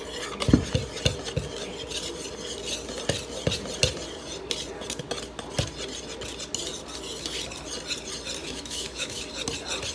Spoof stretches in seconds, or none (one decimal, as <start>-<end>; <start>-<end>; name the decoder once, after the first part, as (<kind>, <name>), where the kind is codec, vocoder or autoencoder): 8.4-9.2 (autoencoder, DAC-VAE)